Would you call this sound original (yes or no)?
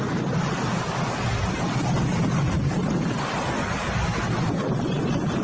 yes